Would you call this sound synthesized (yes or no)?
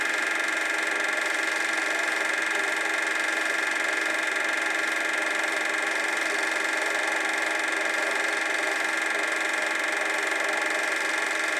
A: no